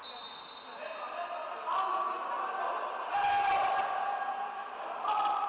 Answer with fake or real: real